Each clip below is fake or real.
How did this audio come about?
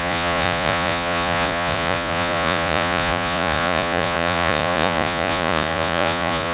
fake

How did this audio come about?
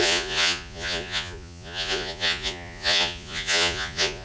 fake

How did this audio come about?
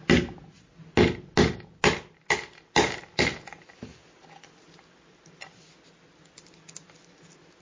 real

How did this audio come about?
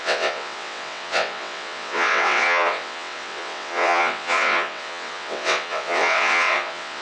fake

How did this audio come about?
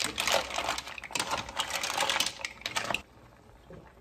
real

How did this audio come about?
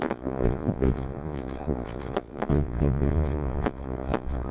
fake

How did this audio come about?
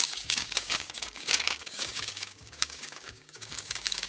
fake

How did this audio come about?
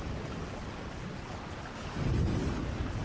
real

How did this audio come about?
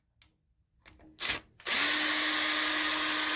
real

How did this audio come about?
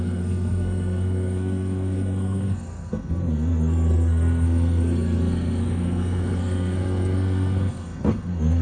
fake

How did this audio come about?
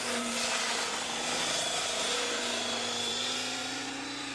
fake